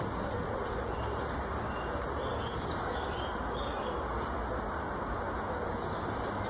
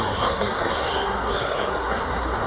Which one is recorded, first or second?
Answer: first